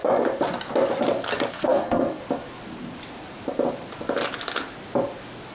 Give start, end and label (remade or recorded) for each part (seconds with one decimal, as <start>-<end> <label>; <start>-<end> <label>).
0.0-1.5 recorded; 1.5-2.2 remade; 2.2-5.5 recorded